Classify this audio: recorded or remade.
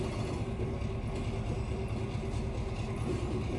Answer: recorded